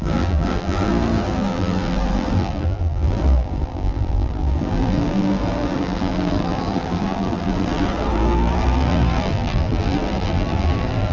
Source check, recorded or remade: remade